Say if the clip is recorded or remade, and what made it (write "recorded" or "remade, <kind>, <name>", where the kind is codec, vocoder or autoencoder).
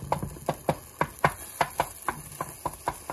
recorded